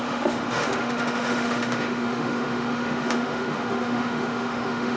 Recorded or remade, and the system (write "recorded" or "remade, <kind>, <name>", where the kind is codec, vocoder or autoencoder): remade, autoencoder, DAC-VAE